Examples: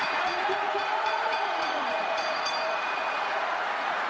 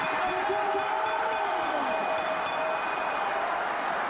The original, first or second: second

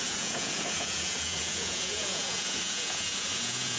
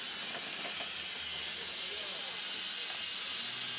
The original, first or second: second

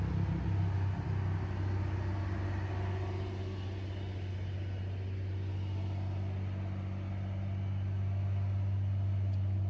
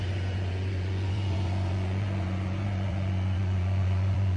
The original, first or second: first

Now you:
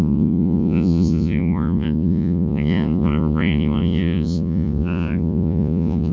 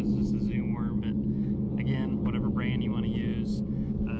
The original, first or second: second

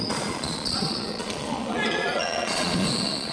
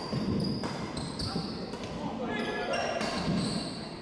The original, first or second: second